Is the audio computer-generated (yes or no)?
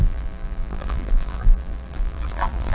yes